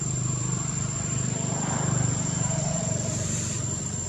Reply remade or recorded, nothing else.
remade